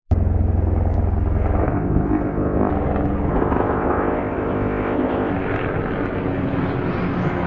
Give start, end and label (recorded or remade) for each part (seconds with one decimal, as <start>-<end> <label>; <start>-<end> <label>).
0.0-1.6 recorded; 1.6-2.7 remade; 2.7-3.3 recorded; 3.3-5.3 remade; 5.3-7.5 recorded